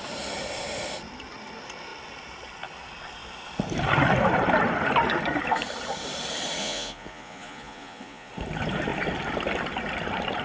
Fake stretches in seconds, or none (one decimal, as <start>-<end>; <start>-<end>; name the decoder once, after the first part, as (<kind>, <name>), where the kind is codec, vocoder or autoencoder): 6.6-8.3 (vocoder, Vocos)